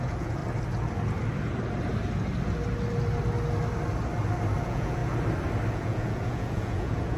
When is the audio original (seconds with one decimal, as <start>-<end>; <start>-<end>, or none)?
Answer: 0.4-4.6; 5.0-5.7